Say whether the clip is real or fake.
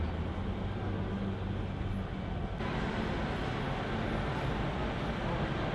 real